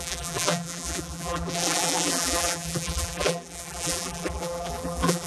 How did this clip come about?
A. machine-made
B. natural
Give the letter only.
A